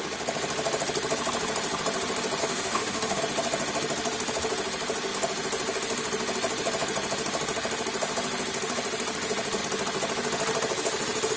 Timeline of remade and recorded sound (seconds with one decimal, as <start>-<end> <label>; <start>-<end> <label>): 0.0-2.4 recorded; 2.4-3.2 remade; 3.2-11.4 recorded

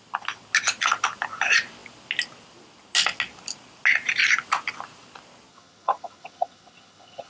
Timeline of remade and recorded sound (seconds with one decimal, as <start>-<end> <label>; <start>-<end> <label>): 0.0-5.5 recorded; 5.5-7.3 remade

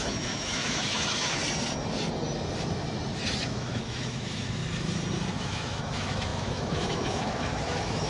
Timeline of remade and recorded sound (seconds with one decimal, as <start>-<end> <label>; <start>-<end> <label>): 0.0-1.4 remade; 1.4-3.4 recorded; 3.4-4.6 remade; 4.6-5.3 recorded; 5.3-8.1 remade

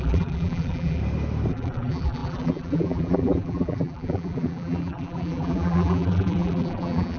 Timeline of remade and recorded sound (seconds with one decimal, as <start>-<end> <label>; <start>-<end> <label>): 0.0-1.0 remade; 1.0-1.5 recorded; 1.5-7.2 remade

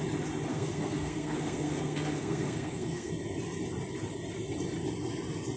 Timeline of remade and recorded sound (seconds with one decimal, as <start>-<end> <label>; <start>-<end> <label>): 0.0-0.5 recorded; 0.5-3.1 remade; 3.1-5.6 recorded

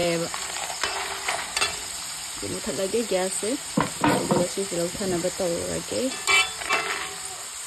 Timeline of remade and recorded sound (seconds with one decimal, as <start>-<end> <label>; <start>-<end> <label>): 0.0-7.7 recorded

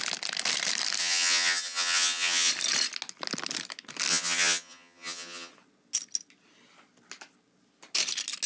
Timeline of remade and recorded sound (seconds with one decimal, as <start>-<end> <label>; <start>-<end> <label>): 0.0-1.0 recorded; 1.0-2.5 remade; 2.5-4.1 recorded; 4.1-5.5 remade; 5.5-8.5 recorded